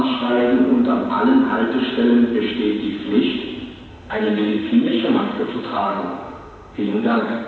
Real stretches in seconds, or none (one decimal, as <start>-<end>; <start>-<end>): 0.4-3.9